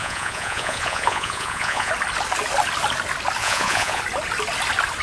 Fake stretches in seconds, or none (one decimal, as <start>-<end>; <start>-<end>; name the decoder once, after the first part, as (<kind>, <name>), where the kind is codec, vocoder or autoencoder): 0.0-1.9 (vocoder, Vocos); 3.4-4.0